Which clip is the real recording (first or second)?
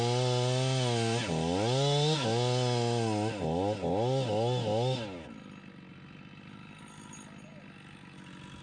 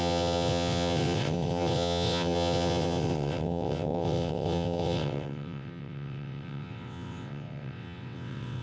first